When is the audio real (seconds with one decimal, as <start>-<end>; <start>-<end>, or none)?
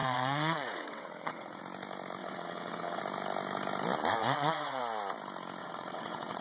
1.6-2.2; 3.0-4.2; 4.8-5.6